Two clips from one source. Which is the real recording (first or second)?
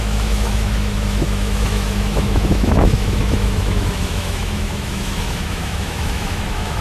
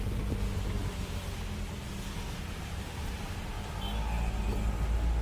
second